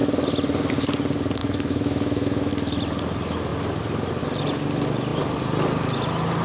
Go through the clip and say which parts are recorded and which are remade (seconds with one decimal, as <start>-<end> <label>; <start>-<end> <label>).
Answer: 0.0-1.4 recorded; 1.4-2.5 remade; 2.5-6.4 recorded